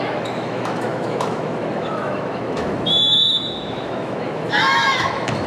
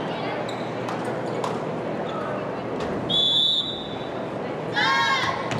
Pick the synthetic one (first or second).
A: first